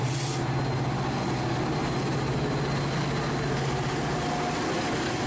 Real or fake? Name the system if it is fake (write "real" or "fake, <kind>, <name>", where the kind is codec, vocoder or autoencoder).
real